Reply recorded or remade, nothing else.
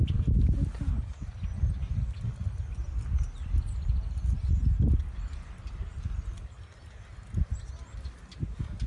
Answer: recorded